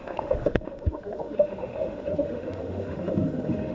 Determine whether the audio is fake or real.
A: fake